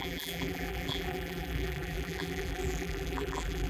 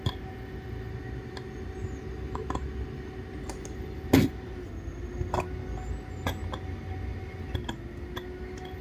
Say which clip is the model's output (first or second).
first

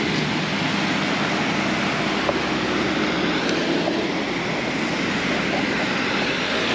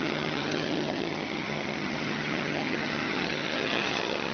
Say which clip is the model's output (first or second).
second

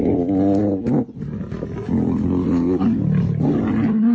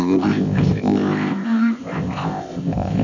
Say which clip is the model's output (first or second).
second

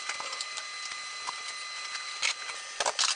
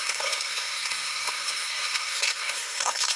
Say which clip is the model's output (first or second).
second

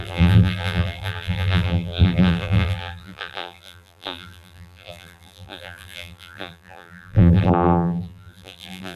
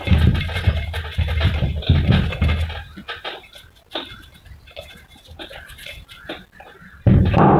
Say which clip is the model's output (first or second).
first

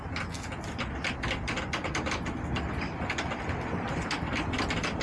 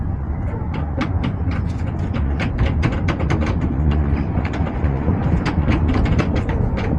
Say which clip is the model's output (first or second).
second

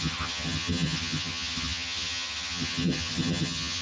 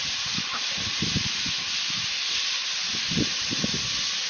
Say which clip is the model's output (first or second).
first